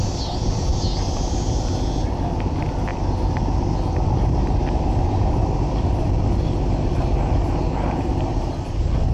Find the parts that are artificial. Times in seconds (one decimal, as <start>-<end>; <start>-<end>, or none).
none